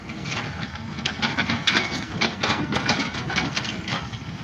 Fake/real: fake